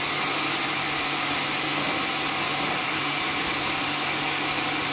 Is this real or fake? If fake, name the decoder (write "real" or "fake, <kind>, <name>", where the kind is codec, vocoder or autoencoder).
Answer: real